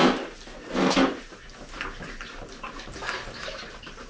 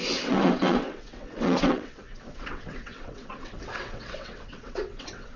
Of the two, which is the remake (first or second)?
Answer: second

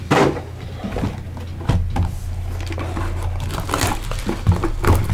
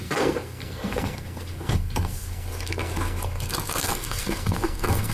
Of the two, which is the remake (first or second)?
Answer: second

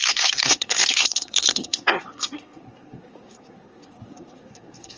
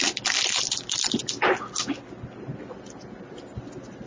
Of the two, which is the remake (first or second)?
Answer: first